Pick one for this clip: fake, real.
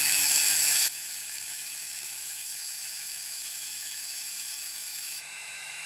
fake